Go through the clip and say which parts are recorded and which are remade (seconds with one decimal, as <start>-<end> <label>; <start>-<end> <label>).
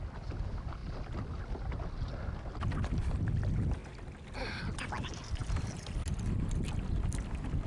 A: 0.0-7.7 recorded